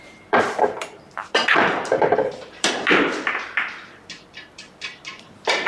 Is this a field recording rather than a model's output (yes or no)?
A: no